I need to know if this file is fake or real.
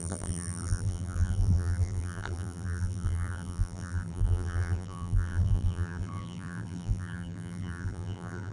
fake